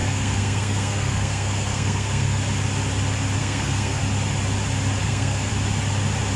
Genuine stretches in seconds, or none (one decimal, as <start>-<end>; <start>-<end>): 2.4-3.4; 4.0-5.0; 5.5-6.4